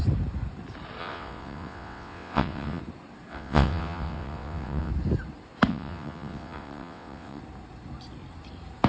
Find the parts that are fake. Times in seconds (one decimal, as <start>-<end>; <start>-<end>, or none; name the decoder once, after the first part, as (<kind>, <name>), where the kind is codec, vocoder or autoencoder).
1.0-2.8 (vocoder, WaveNeXt); 3.3-4.9; 5.7-7.4